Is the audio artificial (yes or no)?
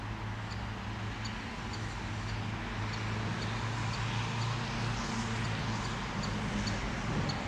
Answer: no